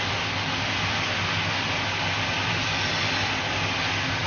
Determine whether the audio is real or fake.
real